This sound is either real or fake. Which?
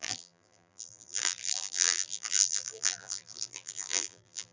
fake